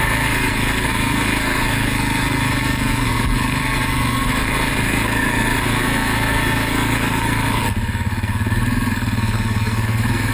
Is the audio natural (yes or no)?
no